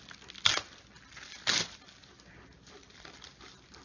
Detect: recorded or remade recorded